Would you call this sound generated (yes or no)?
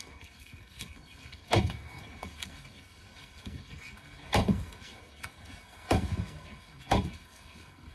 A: yes